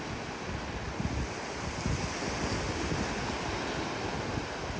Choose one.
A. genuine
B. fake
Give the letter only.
A